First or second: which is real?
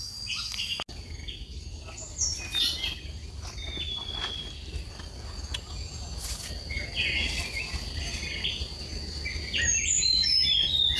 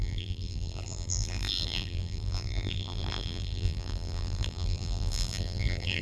first